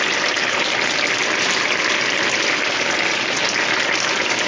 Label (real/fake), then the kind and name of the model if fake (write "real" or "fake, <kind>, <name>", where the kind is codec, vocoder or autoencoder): real